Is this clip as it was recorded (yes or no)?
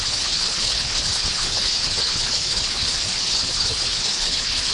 no